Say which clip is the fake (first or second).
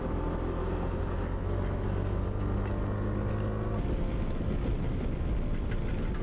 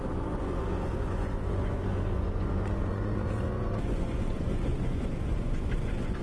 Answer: second